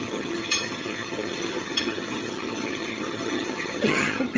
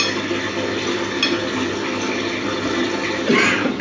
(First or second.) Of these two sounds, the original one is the second